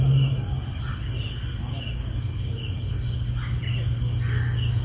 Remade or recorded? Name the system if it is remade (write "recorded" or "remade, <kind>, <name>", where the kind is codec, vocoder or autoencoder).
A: recorded